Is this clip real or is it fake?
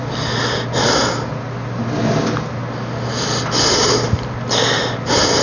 real